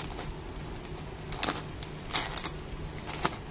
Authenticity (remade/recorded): recorded